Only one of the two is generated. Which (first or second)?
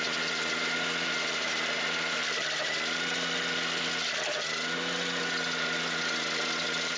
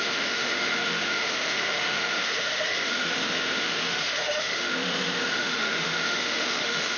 second